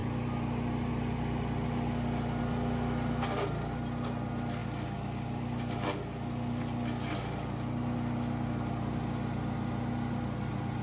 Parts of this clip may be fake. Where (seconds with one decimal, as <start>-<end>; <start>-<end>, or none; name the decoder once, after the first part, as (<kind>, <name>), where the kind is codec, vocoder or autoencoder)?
none